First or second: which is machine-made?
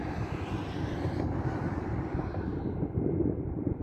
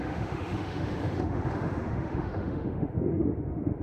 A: second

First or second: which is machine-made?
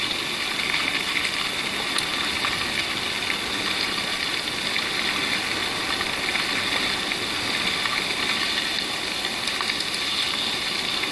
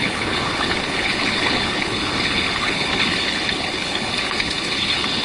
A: second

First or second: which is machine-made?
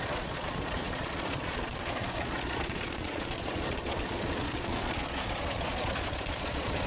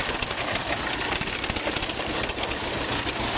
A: first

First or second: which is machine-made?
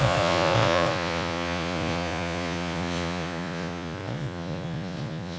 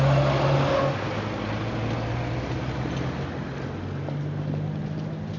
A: first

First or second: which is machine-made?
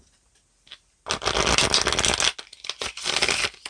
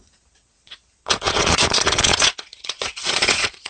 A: second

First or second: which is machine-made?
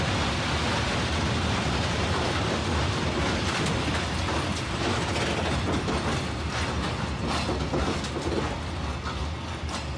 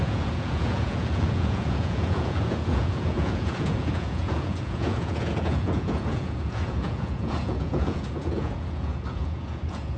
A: second